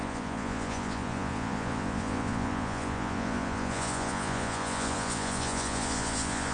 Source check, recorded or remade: remade